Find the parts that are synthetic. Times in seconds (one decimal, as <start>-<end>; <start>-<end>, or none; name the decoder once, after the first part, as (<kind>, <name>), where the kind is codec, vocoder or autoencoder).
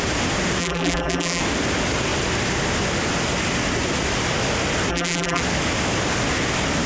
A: 0.6-1.4 (vocoder, BigVGAN v2); 4.9-5.4